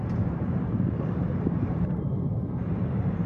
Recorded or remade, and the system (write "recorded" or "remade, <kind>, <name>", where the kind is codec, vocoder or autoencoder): remade, vocoder, BigVGAN v2